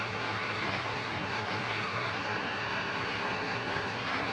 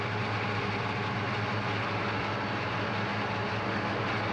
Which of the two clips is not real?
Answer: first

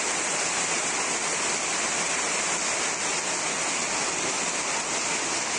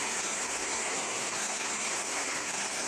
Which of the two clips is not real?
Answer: second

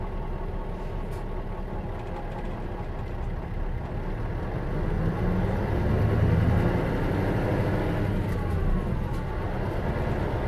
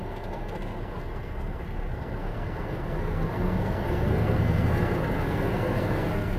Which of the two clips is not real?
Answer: second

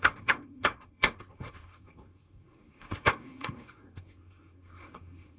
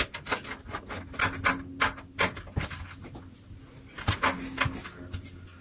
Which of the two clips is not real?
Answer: first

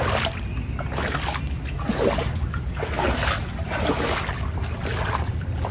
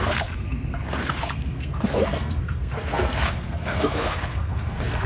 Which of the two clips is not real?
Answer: second